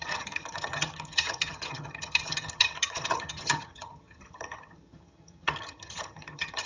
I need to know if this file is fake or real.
fake